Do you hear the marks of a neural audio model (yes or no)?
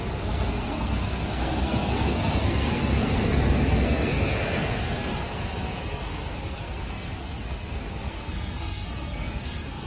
yes